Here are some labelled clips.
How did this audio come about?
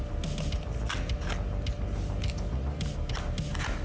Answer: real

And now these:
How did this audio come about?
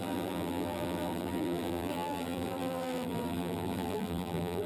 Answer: fake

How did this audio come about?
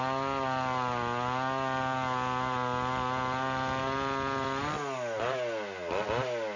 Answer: real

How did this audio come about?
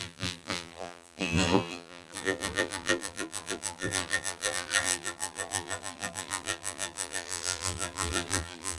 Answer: fake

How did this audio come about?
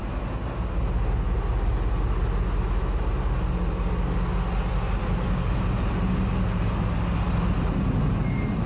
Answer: real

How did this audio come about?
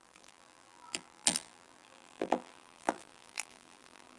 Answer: fake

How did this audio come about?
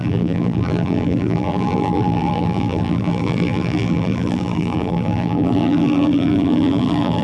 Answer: fake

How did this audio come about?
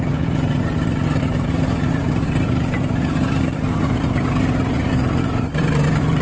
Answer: fake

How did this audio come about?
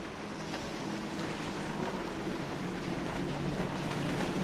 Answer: real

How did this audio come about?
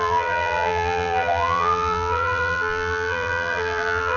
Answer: fake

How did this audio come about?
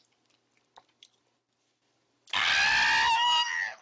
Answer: real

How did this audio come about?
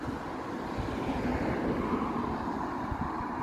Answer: real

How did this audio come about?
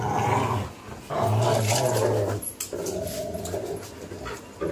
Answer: real